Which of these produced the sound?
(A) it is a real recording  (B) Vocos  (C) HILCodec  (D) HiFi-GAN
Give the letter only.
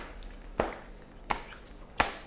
A